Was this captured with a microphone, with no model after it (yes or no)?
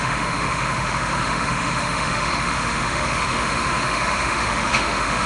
no